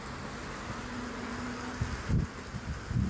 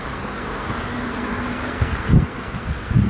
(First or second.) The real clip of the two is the first